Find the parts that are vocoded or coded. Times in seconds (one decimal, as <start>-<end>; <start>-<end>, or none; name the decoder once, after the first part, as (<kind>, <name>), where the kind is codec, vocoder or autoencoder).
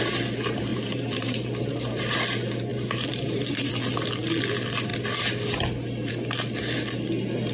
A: 0.7-2.0 (vocoder, BigVGAN v2); 2.7-3.7